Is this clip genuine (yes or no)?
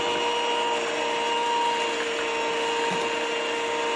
yes